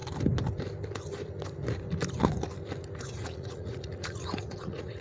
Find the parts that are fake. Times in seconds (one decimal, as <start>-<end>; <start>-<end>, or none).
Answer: 3.0-5.0